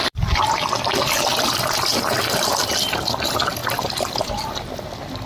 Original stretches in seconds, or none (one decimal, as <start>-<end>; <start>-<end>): none